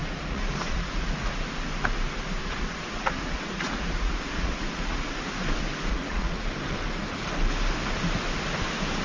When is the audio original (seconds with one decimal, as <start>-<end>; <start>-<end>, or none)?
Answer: 1.3-2.4; 5.1-5.9; 6.4-9.0